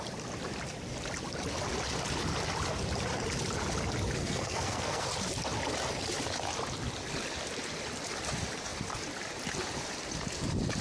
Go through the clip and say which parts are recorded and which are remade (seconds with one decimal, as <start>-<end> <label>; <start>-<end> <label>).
0.0-4.2 recorded; 4.2-5.1 remade; 5.1-10.8 recorded

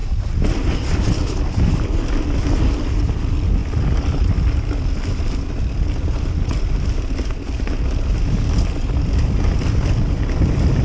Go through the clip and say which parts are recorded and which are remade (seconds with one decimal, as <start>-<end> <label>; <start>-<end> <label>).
0.0-10.8 recorded

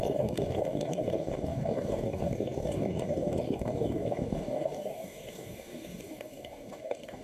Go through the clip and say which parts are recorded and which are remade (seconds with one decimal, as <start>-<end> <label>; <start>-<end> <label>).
0.0-7.2 remade

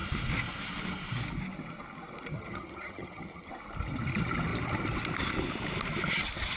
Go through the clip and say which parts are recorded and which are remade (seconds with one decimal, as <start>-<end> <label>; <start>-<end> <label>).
0.0-2.3 recorded; 2.3-3.5 remade; 3.5-6.6 recorded

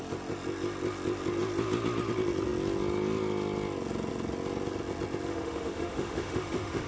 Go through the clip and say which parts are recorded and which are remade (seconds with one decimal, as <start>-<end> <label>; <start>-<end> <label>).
0.0-5.3 recorded; 5.3-6.9 remade

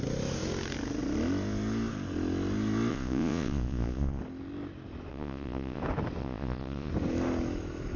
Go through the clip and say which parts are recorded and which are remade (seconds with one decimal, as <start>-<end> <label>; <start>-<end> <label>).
0.0-2.9 recorded; 2.9-4.2 remade; 4.2-5.1 recorded; 5.1-5.8 remade; 5.8-6.2 recorded; 6.2-6.9 remade; 6.9-8.0 recorded

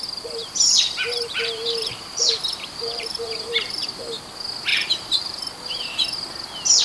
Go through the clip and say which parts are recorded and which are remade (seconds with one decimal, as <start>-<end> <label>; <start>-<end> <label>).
0.0-0.4 recorded; 0.4-4.0 remade; 4.0-4.7 recorded; 4.7-5.4 remade; 5.4-6.8 recorded